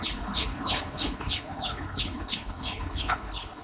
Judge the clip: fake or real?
fake